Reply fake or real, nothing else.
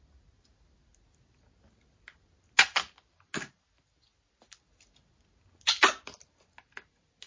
real